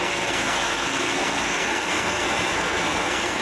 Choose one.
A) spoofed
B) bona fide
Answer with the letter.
A